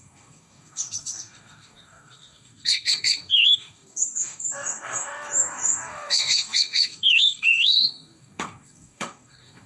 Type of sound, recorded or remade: remade